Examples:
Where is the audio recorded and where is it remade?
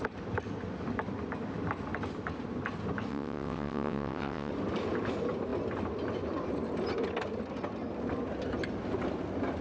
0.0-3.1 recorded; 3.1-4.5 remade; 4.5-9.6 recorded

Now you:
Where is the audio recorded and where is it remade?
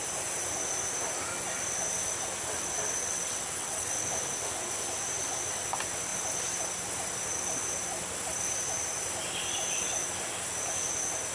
0.0-3.0 recorded; 3.0-3.9 remade; 3.9-11.3 recorded